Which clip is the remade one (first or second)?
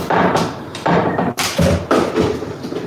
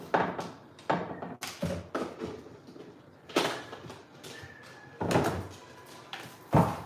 first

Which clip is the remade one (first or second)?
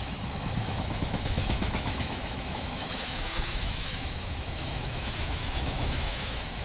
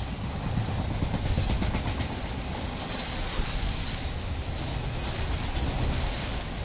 first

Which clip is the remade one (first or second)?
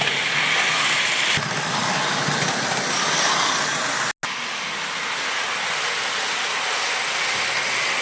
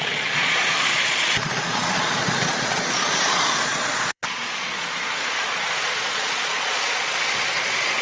second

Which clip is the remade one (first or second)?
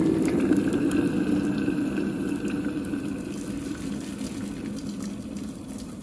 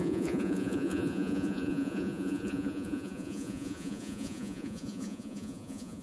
second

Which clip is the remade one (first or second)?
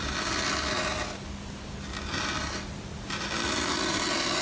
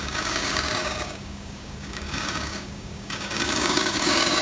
second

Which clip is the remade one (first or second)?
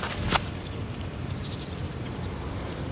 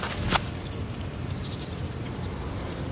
first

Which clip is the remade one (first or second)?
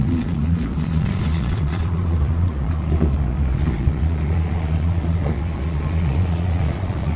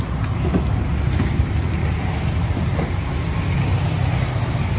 first